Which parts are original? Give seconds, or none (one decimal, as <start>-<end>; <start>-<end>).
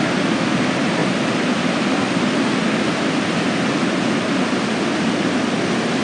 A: 0.0-6.0